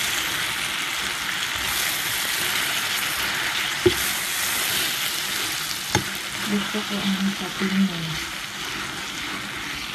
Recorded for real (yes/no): yes